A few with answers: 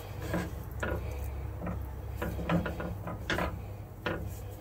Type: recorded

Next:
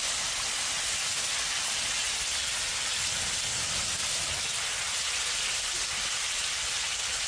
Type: recorded